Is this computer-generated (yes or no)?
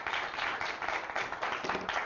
no